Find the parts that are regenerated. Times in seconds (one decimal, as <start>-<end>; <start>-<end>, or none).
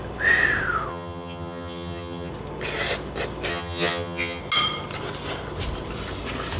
0.9-2.3; 3.5-4.4